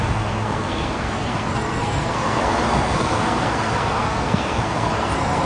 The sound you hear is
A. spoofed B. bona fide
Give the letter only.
A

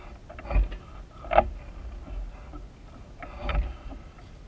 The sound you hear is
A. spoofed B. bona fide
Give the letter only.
B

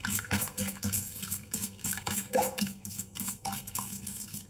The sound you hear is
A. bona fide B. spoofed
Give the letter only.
B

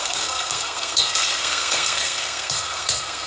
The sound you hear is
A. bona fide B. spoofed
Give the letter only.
B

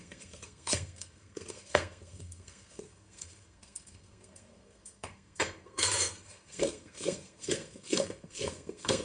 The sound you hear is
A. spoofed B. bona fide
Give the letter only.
A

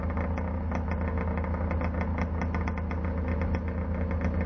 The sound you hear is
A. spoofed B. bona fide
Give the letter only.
B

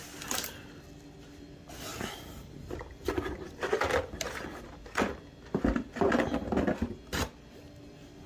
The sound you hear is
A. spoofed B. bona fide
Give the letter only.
B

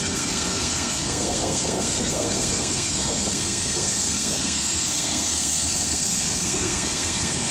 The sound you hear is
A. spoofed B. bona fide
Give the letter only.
A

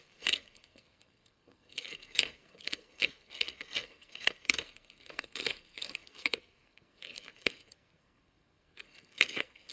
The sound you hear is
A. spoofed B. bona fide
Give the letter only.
A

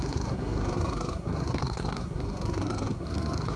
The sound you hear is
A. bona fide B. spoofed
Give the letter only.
B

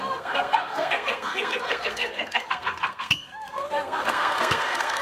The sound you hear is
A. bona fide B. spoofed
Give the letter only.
B